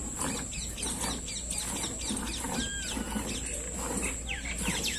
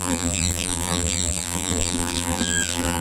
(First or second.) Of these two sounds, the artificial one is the second